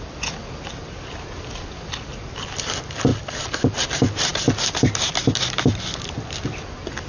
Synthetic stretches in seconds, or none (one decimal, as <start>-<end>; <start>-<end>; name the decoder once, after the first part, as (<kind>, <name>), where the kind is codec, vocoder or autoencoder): none